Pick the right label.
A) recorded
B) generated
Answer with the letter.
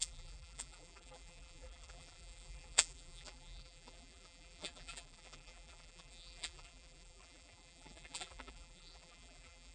B